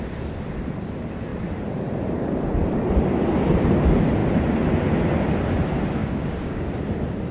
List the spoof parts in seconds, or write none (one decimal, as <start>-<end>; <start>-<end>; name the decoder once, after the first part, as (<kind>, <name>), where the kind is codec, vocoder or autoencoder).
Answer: 6.0-6.6 (codec, DAC)